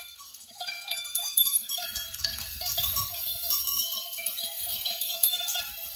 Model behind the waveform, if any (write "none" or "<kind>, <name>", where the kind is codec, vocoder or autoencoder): codec, SNAC